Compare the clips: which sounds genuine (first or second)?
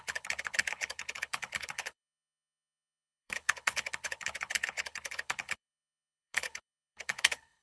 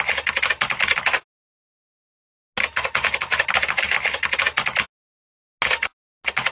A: second